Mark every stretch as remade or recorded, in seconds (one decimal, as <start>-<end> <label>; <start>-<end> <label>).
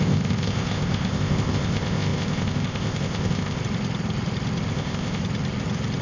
0.0-3.6 remade; 3.6-4.7 recorded; 4.7-5.2 remade; 5.2-6.0 recorded